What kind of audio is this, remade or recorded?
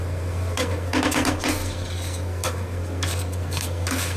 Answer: remade